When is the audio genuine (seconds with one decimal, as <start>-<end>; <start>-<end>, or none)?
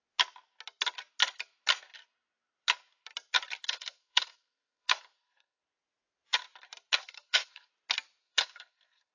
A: 0.0-3.6; 5.6-7.0; 7.7-8.2